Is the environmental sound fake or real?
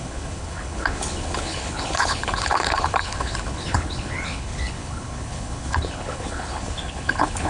fake